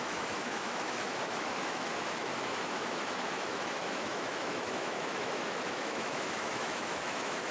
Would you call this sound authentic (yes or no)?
no